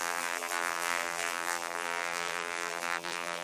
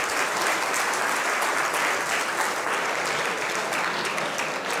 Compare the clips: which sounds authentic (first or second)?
second